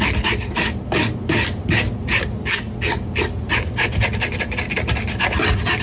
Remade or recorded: recorded